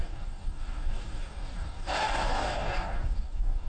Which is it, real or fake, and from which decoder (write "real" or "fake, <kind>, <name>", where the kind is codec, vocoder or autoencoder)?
fake, codec, DAC